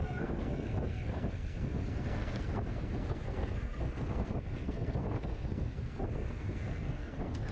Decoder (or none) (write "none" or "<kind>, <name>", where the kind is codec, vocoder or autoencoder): codec, SNAC